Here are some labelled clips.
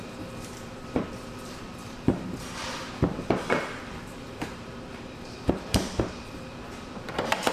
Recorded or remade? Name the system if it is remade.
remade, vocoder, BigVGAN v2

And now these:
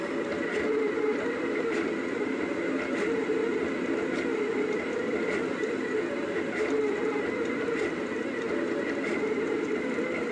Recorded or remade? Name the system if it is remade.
recorded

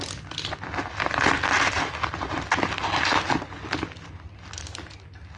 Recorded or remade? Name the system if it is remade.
recorded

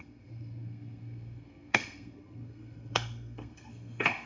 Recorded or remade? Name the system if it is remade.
remade, codec, SNAC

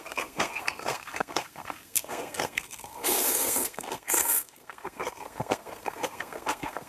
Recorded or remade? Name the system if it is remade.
remade, codec, SNAC